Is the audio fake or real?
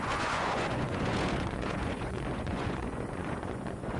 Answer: fake